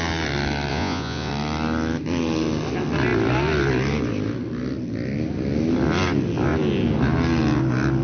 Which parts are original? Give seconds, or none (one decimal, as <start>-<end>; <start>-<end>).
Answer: 0.0-0.7; 1.3-8.0